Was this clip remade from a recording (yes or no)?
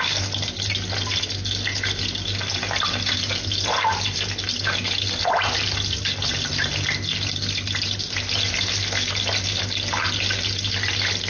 no